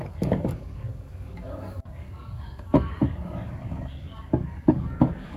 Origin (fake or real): fake